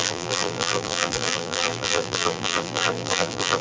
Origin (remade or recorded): remade